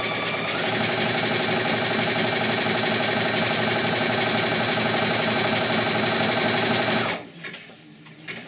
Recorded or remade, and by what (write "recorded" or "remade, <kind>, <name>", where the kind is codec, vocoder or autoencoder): recorded